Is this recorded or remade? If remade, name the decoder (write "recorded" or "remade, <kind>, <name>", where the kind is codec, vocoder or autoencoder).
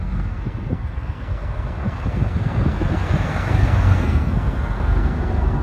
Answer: remade, codec, SNAC